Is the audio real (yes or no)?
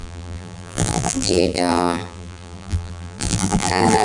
no